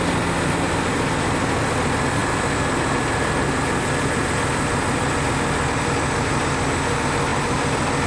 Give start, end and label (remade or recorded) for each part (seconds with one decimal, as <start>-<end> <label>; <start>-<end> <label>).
0.0-8.1 recorded